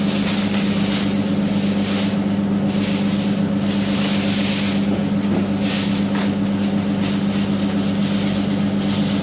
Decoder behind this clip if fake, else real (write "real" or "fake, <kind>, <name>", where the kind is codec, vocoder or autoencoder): real